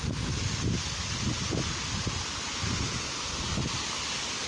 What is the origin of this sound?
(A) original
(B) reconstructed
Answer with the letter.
A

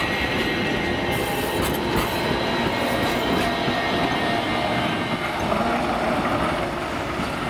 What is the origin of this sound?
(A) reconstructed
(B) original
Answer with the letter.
B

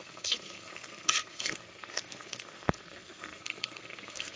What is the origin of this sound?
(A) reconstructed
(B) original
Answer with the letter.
A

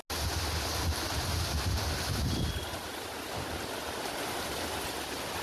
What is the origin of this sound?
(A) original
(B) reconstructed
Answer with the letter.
A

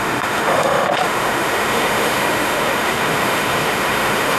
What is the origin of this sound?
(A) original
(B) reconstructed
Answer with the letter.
B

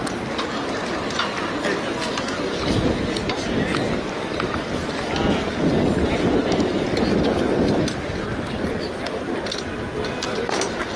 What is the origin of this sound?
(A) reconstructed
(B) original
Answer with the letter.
B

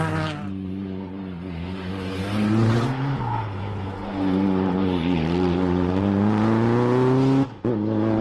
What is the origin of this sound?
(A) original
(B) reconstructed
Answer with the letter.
A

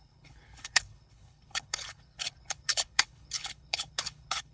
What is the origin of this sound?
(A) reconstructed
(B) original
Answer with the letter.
A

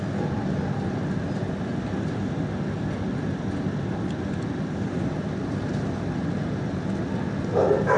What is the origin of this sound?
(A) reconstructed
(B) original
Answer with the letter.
B